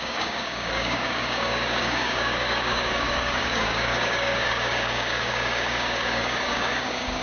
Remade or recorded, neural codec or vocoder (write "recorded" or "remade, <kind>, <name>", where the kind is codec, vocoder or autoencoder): remade, codec, DAC